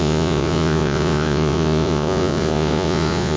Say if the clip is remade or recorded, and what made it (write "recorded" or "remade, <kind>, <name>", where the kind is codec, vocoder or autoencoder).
remade, vocoder, Vocos